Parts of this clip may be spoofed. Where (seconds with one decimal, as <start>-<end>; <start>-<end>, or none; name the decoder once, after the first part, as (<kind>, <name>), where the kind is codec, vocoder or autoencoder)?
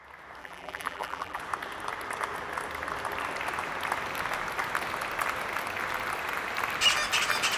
0.4-1.4 (vocoder, BigVGAN v2)